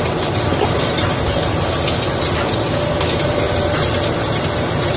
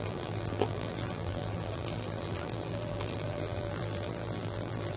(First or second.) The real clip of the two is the first